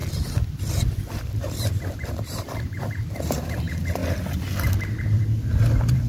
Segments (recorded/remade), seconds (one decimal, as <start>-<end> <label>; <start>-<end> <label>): 0.0-1.1 recorded; 1.1-4.0 remade; 4.0-5.0 recorded; 5.0-6.1 remade